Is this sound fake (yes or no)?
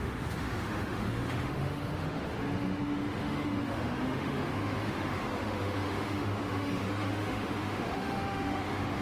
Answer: yes